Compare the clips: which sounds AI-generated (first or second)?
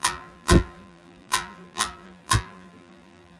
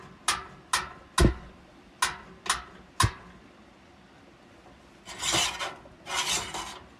first